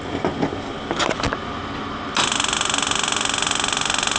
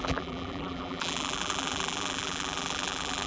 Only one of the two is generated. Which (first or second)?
second